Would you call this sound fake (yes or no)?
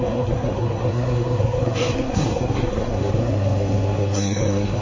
yes